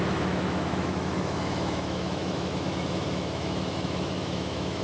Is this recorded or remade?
remade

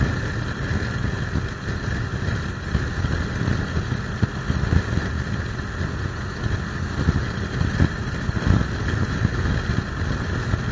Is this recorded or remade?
recorded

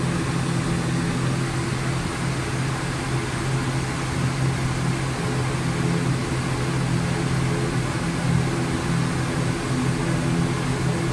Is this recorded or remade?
recorded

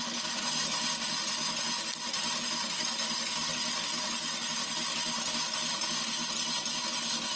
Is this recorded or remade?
recorded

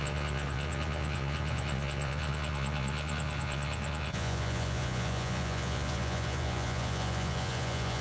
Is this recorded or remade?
remade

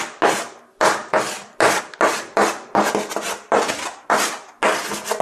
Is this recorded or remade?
recorded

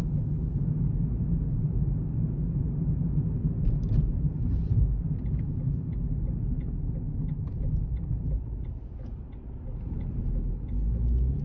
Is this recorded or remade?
recorded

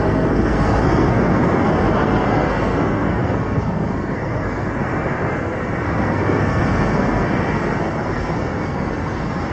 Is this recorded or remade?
remade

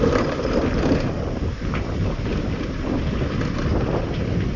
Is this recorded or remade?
recorded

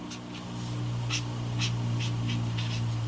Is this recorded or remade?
recorded